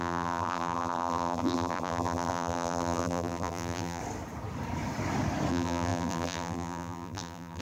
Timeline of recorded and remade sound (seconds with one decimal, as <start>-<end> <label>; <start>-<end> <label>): 0.0-4.0 remade; 4.0-5.5 recorded; 5.5-7.6 remade